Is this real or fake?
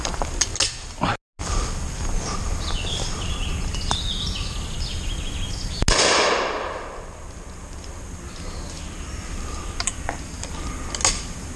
real